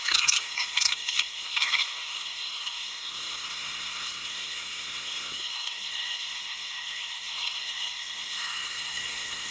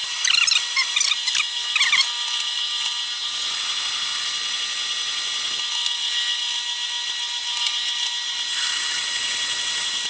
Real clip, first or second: second